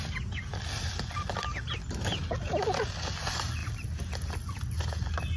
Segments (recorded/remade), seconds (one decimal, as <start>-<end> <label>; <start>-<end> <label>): 0.0-5.4 recorded